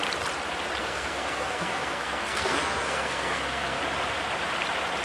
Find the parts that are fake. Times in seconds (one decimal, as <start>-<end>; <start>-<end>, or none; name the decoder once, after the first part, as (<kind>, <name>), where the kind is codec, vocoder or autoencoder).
0.8-3.8 (codec, SNAC)